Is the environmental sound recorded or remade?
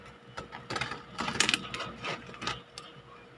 recorded